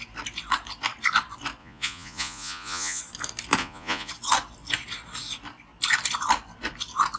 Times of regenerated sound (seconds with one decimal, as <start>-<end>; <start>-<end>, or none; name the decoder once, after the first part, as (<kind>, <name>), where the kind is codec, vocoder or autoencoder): 1.6-3.0 (vocoder, Vocos); 3.6-4.1